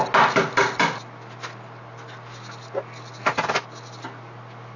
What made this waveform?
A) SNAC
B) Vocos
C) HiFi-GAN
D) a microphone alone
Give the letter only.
D